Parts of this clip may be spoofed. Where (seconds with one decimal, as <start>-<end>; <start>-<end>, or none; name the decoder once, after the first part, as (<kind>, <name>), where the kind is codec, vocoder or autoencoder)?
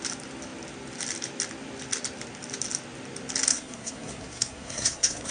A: 3.5-5.3 (codec, SNAC)